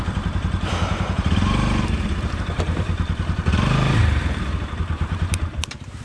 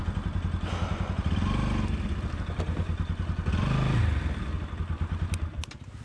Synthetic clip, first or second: first